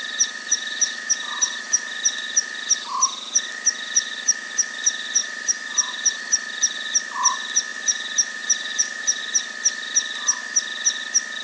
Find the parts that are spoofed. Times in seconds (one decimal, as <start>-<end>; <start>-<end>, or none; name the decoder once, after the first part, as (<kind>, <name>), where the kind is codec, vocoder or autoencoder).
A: 0.5-2.0 (vocoder, BigVGAN v2); 5.2-6.2; 7.7-9.2